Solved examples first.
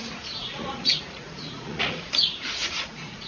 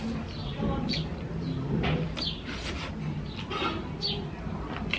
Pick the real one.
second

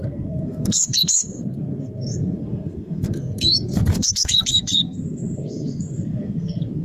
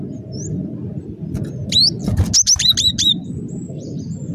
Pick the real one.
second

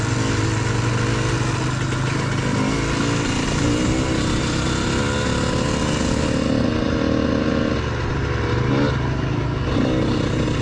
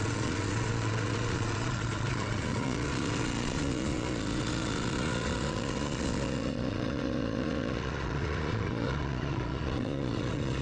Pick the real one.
first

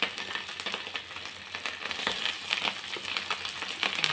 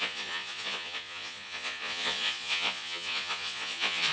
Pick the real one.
first